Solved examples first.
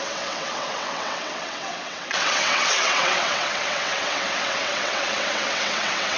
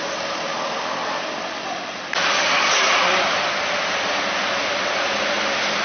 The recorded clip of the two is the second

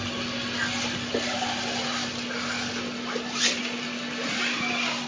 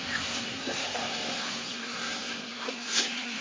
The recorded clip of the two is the first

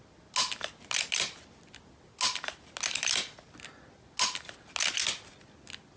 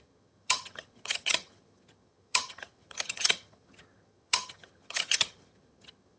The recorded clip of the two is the first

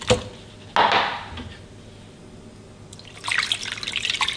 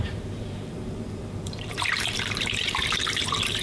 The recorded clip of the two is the first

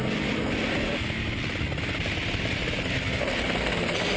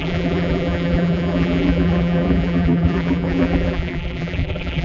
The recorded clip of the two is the first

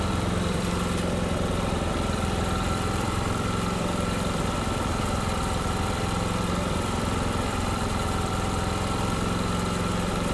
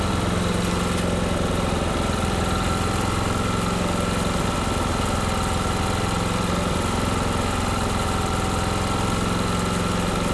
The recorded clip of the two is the second